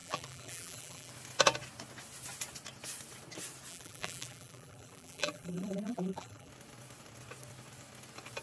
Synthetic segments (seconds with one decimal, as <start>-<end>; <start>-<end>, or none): 0.0-1.1; 3.7-6.5